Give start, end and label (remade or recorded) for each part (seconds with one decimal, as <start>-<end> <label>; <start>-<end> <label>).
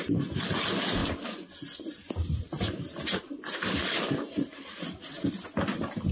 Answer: 0.0-1.0 remade; 1.0-4.0 recorded; 4.0-6.1 remade